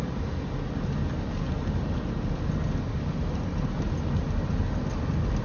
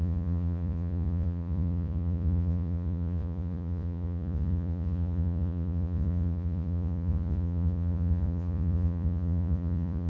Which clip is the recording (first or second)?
first